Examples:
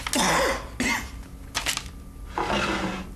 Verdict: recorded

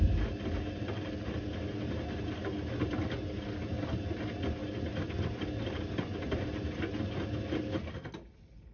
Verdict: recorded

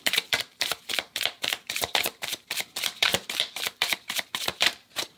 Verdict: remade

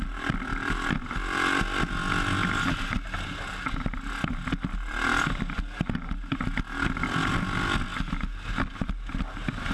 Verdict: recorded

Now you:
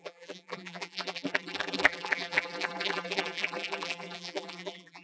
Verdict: remade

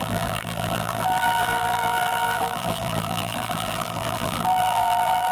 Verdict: remade